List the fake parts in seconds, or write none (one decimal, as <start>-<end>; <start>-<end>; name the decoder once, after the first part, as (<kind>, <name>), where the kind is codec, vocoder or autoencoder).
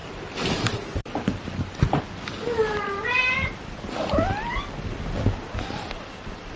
none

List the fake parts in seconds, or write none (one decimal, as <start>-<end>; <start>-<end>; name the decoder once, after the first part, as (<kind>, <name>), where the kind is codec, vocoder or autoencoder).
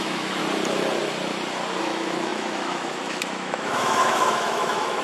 0.0-0.4 (autoencoder, DAC-VAE); 1.8-5.0